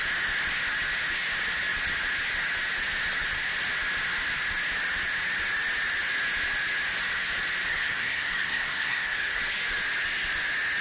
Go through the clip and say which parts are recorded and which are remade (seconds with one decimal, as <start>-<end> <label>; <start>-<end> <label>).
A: 0.0-7.7 recorded; 7.7-9.4 remade; 9.4-10.8 recorded